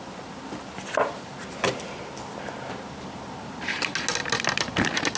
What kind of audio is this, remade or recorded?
recorded